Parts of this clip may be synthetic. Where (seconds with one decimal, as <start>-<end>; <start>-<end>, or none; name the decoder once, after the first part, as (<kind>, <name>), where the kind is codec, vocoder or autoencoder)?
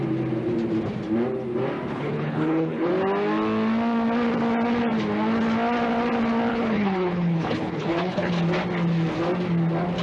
1.9-2.9 (codec, HILCodec); 6.5-8.3